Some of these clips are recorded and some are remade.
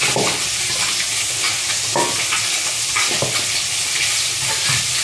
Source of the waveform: recorded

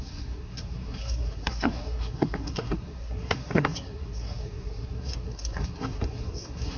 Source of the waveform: remade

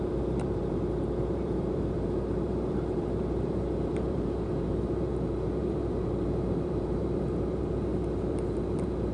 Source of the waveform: remade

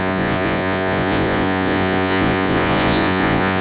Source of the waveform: remade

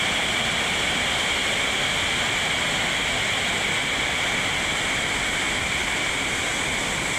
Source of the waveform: recorded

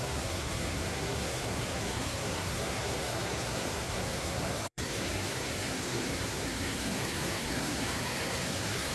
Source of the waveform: remade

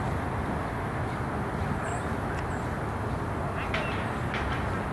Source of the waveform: recorded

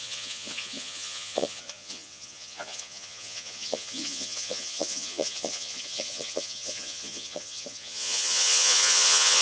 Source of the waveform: remade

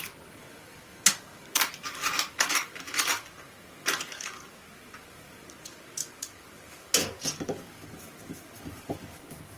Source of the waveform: remade